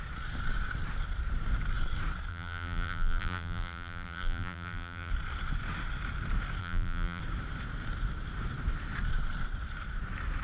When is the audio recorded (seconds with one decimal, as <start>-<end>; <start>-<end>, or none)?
0.0-2.3; 5.1-6.6; 7.2-10.4